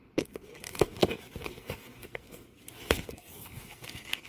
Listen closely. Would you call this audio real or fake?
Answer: fake